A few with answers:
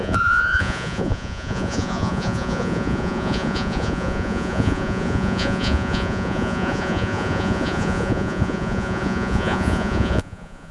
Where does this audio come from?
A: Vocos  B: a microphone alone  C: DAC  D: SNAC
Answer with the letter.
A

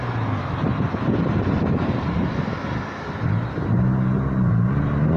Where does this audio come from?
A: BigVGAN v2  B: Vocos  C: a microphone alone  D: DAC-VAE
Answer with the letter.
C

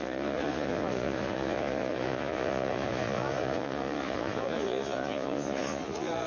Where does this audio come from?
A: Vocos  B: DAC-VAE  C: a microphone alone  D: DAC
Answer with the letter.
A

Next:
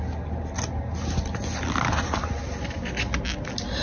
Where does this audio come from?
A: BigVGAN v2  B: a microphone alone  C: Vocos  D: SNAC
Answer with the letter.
B